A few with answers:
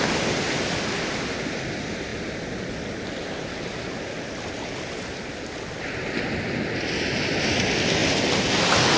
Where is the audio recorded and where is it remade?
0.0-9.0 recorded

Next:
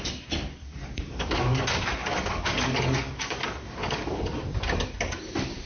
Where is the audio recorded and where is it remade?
0.0-0.6 recorded; 0.6-1.6 remade; 1.6-2.0 recorded; 2.0-4.2 remade; 4.2-5.7 recorded

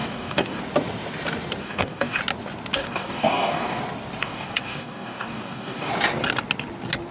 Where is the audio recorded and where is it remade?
0.0-0.6 remade; 0.6-1.6 recorded; 1.6-2.2 remade; 2.2-2.8 recorded; 2.8-3.8 remade; 3.8-4.2 recorded; 4.2-5.9 remade; 5.9-7.1 recorded

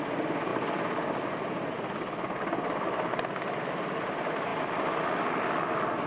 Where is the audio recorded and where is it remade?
0.0-6.1 recorded

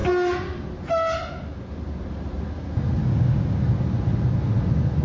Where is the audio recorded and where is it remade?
0.0-3.0 recorded; 3.0-3.6 remade; 3.6-5.0 recorded

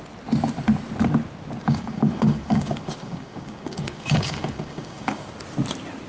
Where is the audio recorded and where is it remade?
0.0-1.6 recorded; 1.6-5.3 remade; 5.3-6.1 recorded

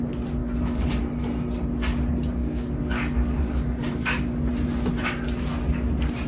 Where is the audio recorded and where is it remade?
0.0-0.4 recorded; 0.4-1.0 remade; 1.0-2.4 recorded; 2.4-4.5 remade; 4.5-6.3 recorded

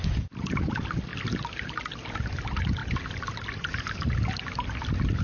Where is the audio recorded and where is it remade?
0.0-5.2 recorded